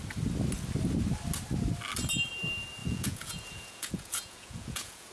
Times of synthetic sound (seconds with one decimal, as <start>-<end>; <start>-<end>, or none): 2.8-5.1